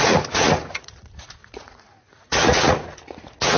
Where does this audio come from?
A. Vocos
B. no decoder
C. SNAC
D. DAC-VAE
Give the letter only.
A